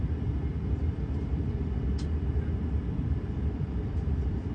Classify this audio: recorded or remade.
remade